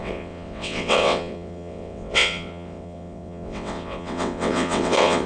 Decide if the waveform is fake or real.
fake